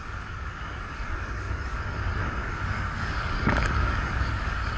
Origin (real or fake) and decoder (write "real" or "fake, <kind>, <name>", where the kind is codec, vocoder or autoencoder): fake, codec, DAC